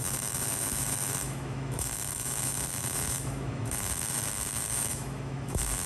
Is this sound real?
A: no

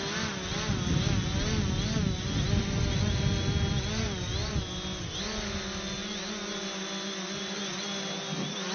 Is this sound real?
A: yes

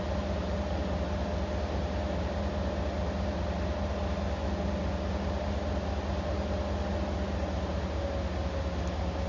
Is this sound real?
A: yes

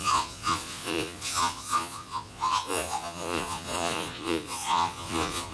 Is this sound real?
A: no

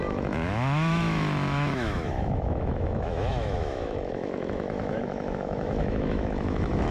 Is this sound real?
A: no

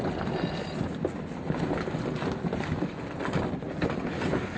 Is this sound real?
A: yes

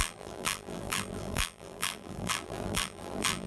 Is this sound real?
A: no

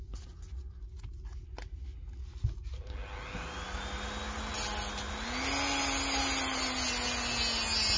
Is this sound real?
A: yes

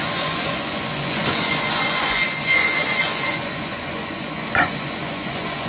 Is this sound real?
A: no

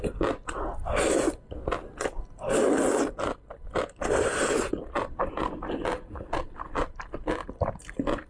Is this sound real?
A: yes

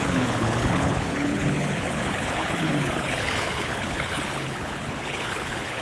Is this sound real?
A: no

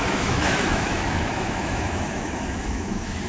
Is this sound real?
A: no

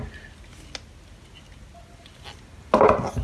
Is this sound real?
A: yes